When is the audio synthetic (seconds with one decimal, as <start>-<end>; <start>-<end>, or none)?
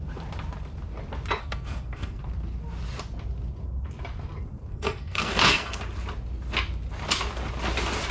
1.4-2.2; 4.7-5.8